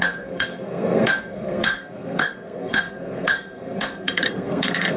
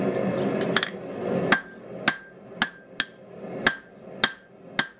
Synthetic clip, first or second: first